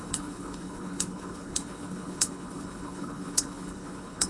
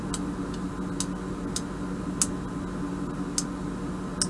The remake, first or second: first